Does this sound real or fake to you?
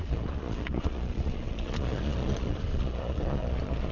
fake